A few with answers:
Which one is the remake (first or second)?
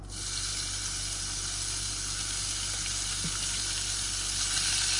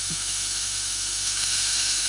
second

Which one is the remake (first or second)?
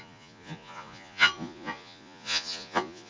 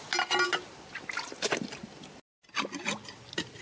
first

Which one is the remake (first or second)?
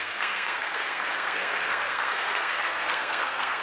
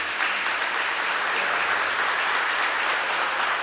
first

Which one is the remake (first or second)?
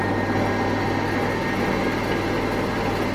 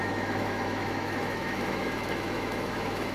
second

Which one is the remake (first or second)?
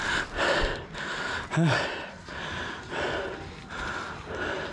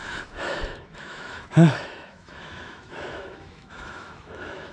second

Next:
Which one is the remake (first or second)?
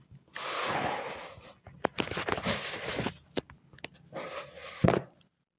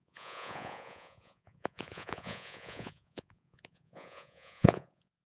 second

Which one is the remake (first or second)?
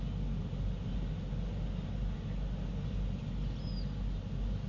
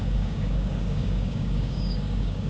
second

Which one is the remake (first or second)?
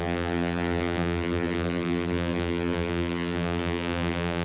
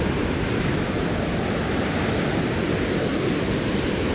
first